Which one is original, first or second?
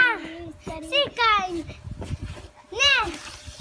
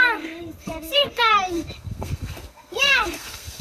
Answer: first